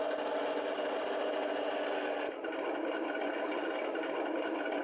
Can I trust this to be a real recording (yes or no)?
yes